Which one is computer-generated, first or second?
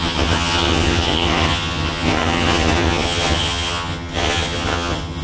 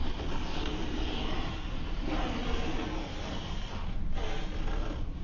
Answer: first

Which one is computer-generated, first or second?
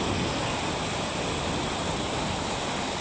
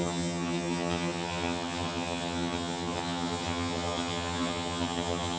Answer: second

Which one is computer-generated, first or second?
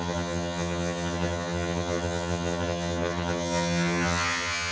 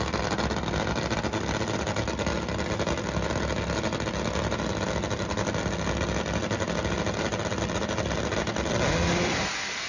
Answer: first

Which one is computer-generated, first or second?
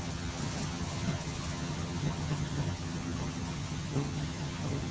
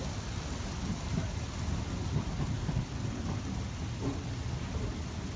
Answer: first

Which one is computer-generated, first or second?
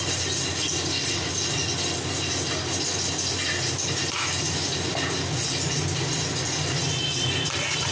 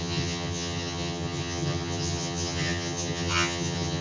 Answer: second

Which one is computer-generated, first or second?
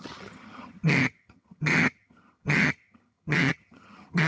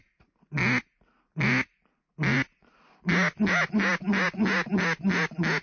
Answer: first